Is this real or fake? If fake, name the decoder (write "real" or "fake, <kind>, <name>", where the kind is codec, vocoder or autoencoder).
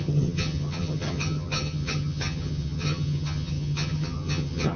fake, vocoder, HiFi-GAN